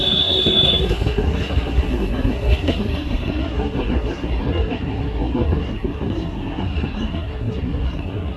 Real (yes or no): no